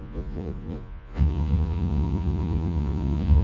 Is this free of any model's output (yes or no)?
no